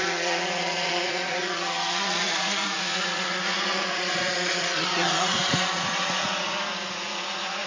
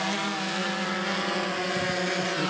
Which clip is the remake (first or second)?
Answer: first